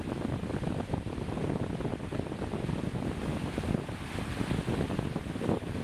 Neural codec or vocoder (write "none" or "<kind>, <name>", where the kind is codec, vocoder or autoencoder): none